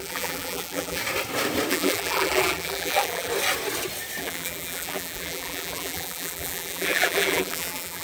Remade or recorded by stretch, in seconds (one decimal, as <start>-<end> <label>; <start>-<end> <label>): 0.0-1.0 remade; 1.0-1.7 recorded; 1.7-3.3 remade; 3.3-4.2 recorded; 4.2-8.0 remade

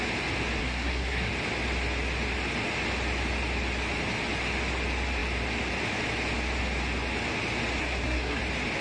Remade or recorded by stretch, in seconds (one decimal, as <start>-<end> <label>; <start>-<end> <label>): 0.0-0.6 recorded; 0.6-1.3 remade; 1.3-7.8 recorded; 7.8-8.4 remade; 8.4-8.8 recorded